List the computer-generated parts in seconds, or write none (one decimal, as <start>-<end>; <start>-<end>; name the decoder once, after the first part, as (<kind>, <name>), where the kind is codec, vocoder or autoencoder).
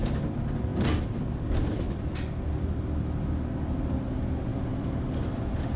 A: 0.7-2.8 (vocoder, BigVGAN v2); 4.5-5.8